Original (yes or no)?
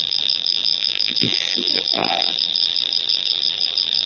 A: no